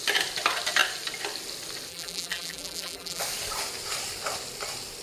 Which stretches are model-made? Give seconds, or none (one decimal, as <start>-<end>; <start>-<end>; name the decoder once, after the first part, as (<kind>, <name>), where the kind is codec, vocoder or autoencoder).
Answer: 1.9-3.2 (vocoder, BigVGAN v2)